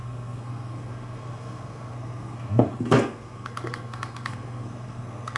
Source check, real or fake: fake